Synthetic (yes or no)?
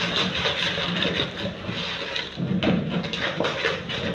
no